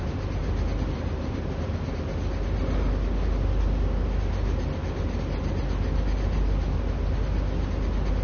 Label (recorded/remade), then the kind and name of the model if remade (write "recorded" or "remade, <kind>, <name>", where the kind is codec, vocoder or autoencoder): recorded